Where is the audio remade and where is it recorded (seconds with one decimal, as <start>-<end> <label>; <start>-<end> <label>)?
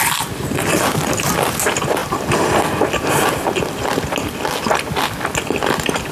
0.0-6.1 recorded